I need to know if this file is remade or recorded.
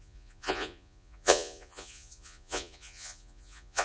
remade